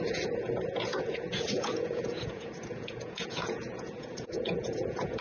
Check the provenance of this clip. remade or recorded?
remade